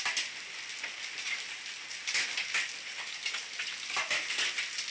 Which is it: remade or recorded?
recorded